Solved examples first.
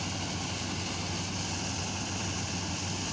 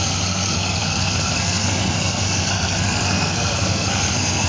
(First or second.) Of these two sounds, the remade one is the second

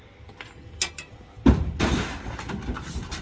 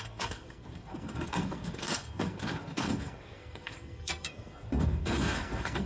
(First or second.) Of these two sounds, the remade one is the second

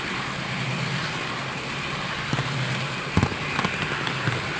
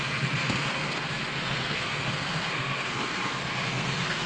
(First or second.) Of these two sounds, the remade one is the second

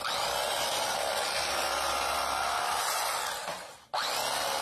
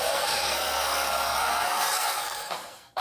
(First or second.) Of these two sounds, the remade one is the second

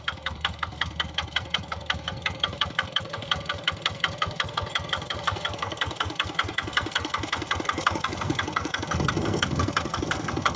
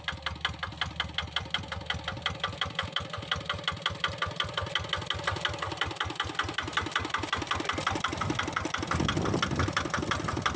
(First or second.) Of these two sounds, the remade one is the first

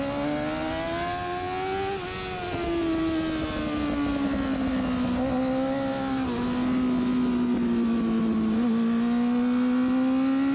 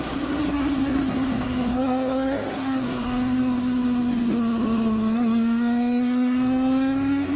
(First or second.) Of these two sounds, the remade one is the second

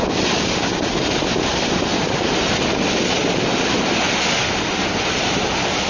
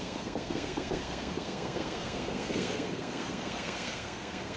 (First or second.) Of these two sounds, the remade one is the second